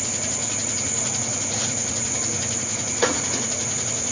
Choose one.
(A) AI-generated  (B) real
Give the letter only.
A